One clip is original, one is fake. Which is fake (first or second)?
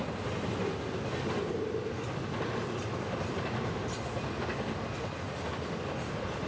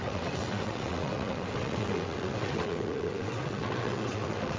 second